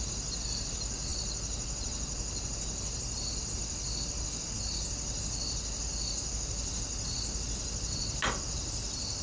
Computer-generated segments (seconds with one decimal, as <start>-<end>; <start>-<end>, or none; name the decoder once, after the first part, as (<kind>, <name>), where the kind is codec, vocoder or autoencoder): none